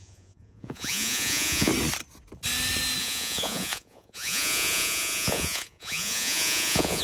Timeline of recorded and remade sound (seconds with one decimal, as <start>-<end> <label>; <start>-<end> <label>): 0.0-1.7 remade; 1.7-3.0 recorded; 3.0-7.0 remade